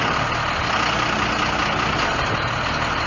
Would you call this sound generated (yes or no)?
no